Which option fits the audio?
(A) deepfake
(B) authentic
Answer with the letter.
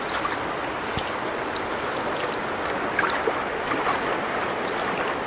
B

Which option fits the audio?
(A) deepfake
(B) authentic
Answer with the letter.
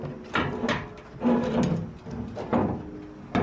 B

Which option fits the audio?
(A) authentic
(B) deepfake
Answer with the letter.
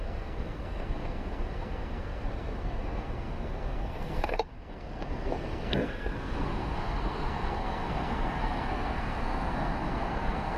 B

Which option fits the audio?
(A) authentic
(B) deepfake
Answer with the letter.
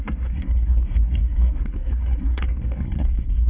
B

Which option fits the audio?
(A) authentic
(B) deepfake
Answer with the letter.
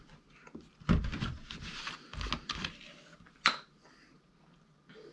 A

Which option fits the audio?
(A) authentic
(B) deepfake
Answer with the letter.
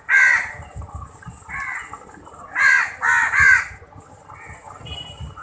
A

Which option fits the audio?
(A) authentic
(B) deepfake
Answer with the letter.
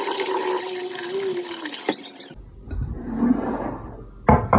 A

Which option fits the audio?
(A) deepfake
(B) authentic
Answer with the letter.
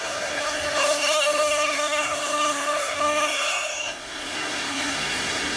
A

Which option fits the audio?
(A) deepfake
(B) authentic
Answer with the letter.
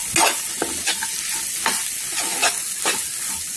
B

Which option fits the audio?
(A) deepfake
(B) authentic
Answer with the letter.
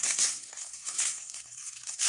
A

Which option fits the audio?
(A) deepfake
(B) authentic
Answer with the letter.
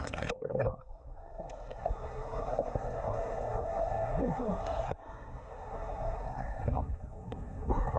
A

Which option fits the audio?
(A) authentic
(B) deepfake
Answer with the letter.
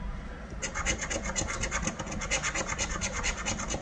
A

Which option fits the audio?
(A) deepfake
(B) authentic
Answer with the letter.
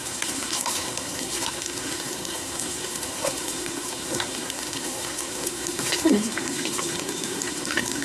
A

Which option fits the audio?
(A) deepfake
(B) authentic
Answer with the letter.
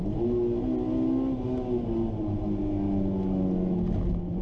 B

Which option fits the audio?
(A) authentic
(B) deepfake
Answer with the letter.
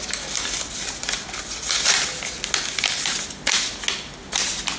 A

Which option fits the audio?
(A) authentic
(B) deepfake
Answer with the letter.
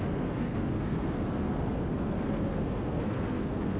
B